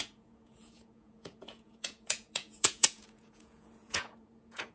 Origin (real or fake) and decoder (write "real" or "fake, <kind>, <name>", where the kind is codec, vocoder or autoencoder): fake, vocoder, Vocos